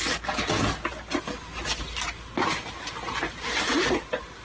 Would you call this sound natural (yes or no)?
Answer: yes